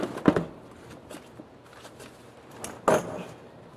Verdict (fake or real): real